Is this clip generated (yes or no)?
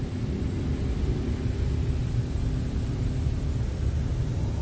no